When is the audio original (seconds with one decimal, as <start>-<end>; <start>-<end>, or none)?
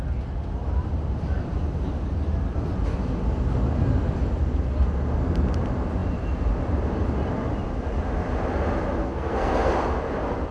0.0-9.0; 9.7-10.5